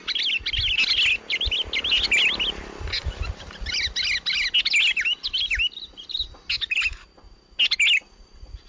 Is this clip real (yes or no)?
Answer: yes